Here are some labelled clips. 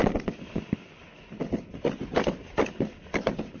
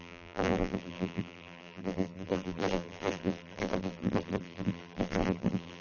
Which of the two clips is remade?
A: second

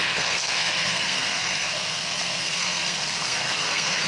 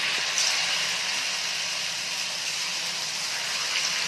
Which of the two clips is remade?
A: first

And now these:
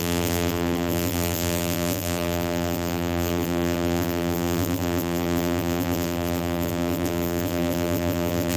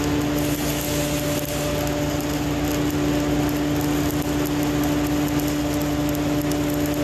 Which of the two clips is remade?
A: first